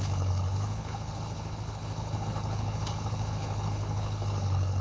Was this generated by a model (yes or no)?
yes